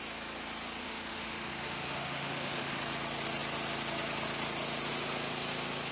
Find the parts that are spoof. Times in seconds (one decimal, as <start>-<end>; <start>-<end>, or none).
0.8-2.8